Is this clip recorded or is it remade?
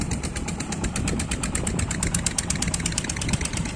remade